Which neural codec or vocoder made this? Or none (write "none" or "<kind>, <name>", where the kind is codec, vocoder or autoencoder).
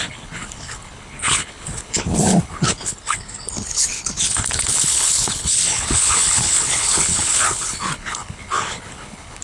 codec, HILCodec